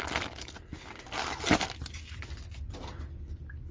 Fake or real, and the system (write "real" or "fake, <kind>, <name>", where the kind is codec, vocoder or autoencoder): real